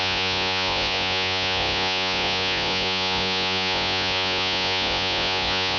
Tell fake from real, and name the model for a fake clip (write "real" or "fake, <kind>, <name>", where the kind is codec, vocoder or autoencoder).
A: fake, vocoder, Vocos